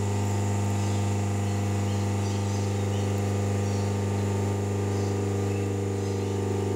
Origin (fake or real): real